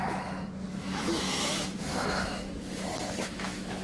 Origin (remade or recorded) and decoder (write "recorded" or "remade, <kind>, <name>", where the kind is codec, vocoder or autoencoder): remade, autoencoder, DAC-VAE